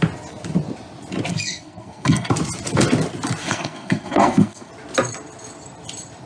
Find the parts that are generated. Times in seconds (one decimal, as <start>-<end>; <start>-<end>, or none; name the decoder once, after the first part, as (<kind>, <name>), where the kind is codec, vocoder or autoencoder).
1.3-2.3 (codec, SNAC); 3.4-4.7